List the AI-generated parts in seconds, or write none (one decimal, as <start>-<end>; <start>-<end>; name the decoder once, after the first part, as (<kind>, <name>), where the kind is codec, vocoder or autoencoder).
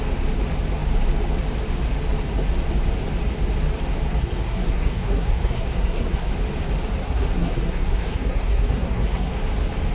4.2-6.3 (codec, SNAC); 7.0-9.3